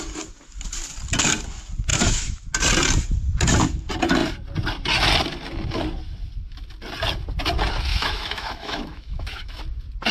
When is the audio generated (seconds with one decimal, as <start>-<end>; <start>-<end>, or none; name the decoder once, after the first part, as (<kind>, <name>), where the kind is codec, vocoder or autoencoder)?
1.9-2.5 (autoencoder, DAC-VAE); 7.9-9.6